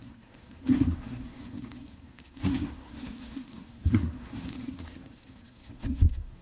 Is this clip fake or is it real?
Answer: fake